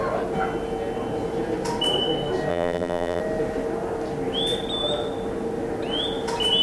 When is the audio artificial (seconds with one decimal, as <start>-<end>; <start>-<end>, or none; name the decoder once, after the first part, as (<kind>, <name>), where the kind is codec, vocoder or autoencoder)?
2.5-3.2 (vocoder, BigVGAN v2)